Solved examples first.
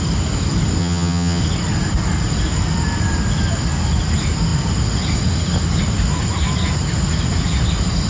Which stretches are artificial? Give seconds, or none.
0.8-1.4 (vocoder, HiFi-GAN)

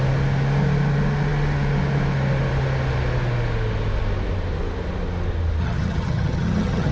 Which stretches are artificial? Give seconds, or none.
5.6-6.9 (vocoder, HiFi-GAN)